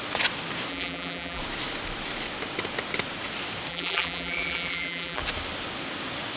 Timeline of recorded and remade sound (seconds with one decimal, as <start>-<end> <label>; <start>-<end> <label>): 0.0-0.7 recorded; 0.7-1.4 remade; 1.4-3.7 recorded; 3.7-5.2 remade; 5.2-6.4 recorded